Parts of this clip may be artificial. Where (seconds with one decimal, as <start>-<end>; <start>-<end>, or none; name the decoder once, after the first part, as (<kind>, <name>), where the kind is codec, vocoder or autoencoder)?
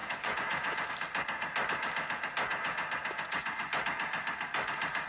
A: 0.0-0.9 (vocoder, Vocos); 2.5-3.7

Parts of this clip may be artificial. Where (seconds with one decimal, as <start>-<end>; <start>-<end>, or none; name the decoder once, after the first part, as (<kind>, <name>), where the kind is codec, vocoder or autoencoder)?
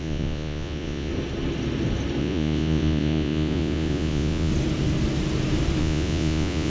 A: 0.0-1.1 (vocoder, Vocos); 2.2-4.5; 5.8-6.7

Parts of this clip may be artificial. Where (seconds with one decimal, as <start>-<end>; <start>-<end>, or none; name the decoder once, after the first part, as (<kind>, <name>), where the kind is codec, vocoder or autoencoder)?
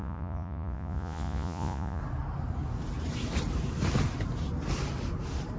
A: 0.0-2.0 (vocoder, Vocos)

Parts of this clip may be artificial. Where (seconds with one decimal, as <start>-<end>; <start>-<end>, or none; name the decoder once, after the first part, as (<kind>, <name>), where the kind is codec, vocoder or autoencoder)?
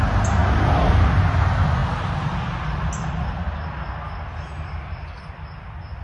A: none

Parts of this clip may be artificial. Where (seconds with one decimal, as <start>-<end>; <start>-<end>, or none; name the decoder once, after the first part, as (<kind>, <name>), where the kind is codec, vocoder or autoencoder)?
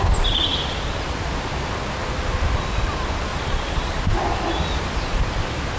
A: 3.3-4.0 (vocoder, Vocos)